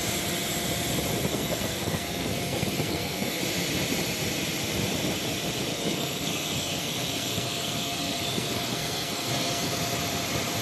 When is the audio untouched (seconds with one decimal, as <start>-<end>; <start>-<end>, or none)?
0.0-1.3; 3.4-5.7; 9.8-10.6